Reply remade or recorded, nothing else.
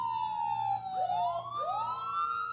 recorded